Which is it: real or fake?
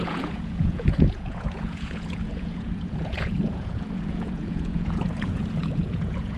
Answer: fake